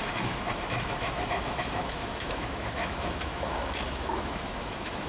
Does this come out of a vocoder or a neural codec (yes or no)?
yes